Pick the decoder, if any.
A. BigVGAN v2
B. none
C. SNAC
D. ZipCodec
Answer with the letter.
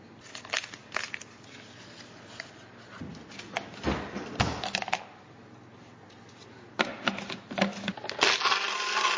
B